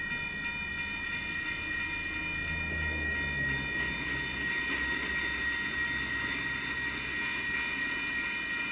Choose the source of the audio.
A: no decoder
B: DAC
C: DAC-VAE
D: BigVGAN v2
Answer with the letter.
A